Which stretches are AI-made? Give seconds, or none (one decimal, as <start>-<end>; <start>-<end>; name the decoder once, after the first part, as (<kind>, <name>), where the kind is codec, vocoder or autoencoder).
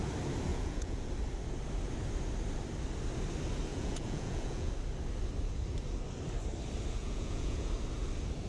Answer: 0.5-1.1 (vocoder, Vocos); 3.7-4.7; 7.0-7.7